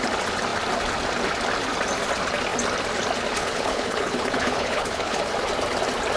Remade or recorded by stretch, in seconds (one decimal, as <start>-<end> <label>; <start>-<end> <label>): 0.0-3.4 recorded; 3.4-5.2 remade; 5.2-6.2 recorded